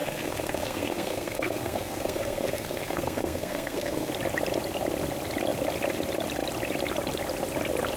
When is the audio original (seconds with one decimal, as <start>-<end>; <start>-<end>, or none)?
4.1-8.0

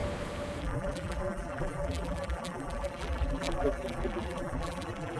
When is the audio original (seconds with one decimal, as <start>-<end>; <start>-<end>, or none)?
0.0-0.6

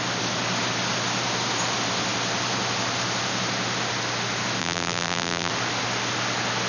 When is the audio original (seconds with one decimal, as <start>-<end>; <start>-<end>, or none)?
0.0-4.6; 5.5-6.7

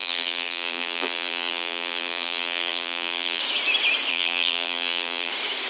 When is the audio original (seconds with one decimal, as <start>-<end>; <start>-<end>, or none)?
3.4-4.1; 5.3-5.7

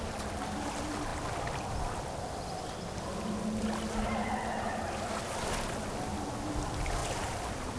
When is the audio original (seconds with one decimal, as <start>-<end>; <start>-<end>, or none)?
0.0-7.8

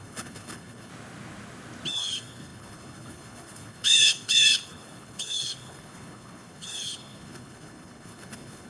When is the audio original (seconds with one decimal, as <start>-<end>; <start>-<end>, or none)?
0.9-1.9